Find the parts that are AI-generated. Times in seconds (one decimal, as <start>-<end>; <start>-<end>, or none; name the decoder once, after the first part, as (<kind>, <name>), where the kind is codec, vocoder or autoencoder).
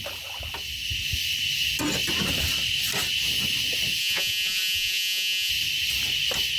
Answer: 4.0-5.5 (vocoder, Vocos)